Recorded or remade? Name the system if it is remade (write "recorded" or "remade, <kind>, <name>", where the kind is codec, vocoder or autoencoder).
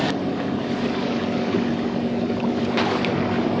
remade, codec, DAC